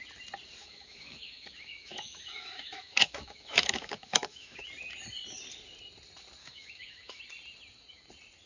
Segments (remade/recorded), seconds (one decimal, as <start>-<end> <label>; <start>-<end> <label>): 0.0-0.6 recorded; 0.6-4.6 remade; 4.6-6.4 recorded; 6.4-7.2 remade; 7.2-8.5 recorded